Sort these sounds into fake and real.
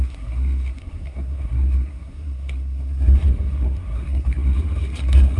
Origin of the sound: fake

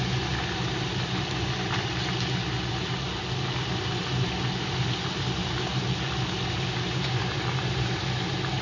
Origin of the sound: real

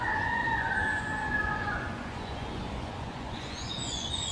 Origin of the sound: fake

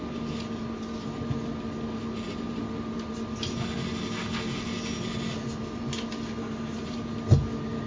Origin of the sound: real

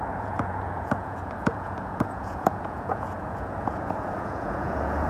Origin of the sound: fake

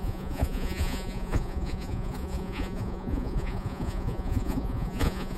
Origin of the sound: fake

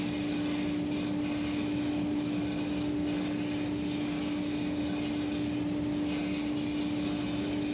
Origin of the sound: real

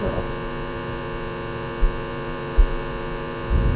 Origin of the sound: fake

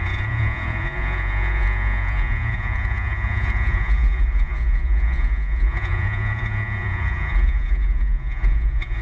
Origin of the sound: fake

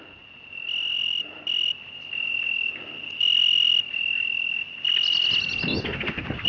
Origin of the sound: real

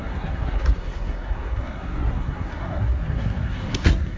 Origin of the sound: fake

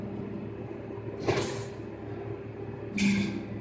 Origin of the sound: real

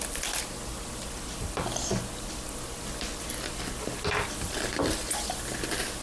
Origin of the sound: real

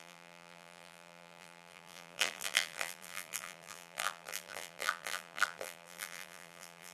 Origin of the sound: fake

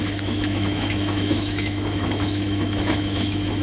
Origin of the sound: fake